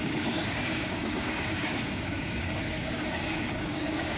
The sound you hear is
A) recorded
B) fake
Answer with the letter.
B